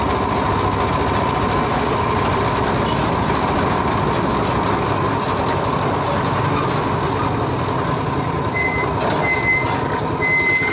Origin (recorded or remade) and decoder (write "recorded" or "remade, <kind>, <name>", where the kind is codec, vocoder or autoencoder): recorded